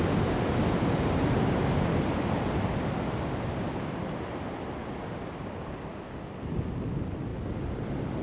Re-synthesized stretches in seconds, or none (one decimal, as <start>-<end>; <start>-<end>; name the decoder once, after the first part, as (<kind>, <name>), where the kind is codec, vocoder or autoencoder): none